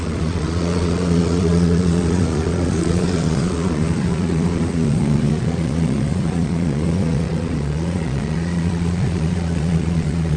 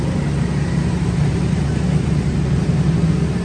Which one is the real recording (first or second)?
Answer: second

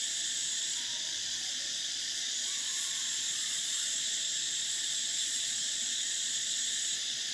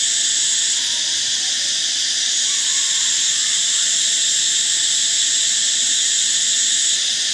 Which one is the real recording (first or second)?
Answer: second